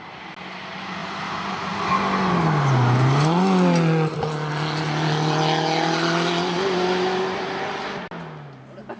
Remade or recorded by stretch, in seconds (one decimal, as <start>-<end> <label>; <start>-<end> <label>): 0.0-9.0 recorded